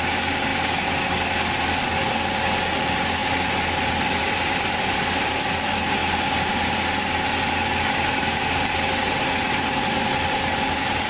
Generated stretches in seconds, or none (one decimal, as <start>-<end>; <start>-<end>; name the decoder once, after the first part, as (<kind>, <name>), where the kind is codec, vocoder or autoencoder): none